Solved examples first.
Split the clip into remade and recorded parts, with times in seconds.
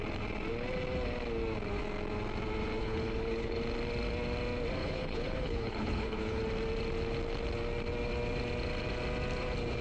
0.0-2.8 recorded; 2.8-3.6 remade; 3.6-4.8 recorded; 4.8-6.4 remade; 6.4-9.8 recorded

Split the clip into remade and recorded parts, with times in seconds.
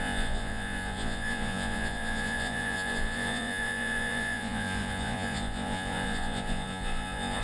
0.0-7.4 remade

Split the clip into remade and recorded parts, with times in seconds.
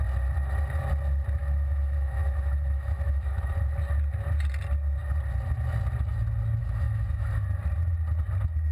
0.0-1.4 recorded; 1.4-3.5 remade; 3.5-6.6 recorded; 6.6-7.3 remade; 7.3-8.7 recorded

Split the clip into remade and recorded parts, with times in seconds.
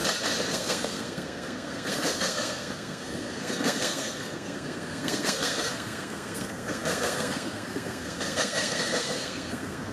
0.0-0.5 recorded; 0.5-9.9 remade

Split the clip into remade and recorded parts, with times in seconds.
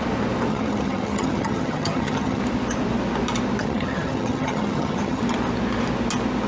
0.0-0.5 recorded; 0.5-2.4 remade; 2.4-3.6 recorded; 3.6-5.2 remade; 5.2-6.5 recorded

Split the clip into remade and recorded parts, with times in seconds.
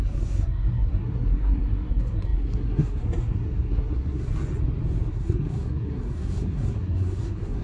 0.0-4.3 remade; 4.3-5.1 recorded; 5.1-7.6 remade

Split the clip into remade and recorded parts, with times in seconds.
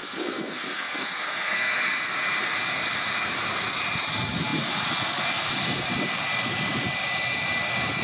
0.0-1.8 remade; 1.8-8.0 recorded